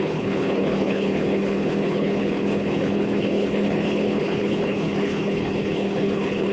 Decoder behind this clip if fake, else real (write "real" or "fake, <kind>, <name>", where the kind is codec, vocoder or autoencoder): fake, codec, HILCodec